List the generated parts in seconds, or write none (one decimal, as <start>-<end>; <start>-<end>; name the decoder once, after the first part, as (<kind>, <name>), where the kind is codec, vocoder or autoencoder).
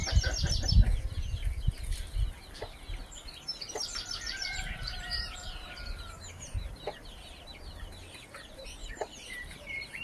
3.8-7.2 (vocoder, BigVGAN v2); 8.8-10.0